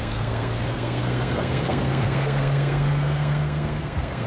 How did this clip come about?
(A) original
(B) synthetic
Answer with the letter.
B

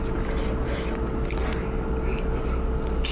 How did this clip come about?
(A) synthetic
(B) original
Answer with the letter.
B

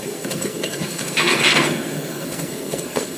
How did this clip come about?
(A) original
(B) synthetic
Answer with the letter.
B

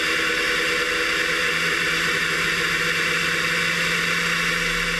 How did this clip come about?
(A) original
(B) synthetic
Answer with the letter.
A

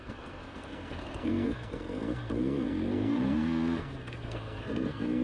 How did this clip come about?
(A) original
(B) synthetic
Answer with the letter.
B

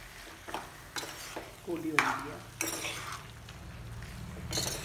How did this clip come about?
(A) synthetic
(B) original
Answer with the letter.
B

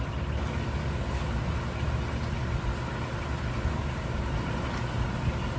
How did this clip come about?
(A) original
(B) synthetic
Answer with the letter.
A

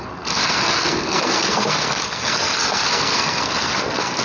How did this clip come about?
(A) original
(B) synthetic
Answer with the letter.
B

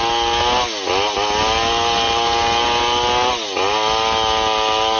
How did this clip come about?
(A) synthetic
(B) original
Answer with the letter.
B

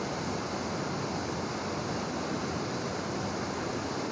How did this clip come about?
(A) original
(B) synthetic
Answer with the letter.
A